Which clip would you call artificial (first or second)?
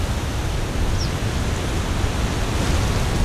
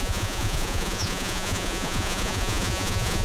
second